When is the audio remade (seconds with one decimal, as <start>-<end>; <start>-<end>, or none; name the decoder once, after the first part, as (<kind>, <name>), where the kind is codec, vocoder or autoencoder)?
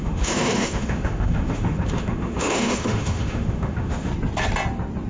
0.0-4.1 (autoencoder, DAC-VAE)